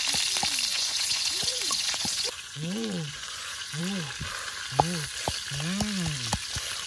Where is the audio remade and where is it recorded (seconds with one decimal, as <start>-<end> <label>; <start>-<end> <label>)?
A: 0.0-0.7 recorded; 0.7-3.8 remade; 3.8-6.9 recorded